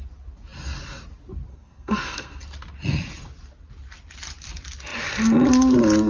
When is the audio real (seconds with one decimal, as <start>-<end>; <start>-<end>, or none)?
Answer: 0.0-1.5; 2.4-6.1